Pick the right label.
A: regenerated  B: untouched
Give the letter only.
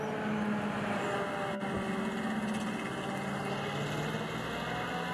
B